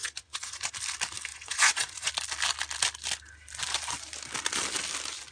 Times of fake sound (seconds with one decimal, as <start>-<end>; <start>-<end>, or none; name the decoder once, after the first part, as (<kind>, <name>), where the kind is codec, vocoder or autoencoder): 0.0-0.7 (vocoder, Vocos); 1.3-2.1